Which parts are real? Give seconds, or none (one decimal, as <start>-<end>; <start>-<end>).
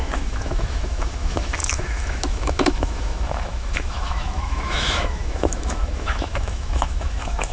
none